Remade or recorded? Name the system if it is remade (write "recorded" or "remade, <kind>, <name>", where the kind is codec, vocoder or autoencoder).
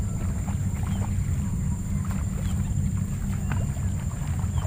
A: recorded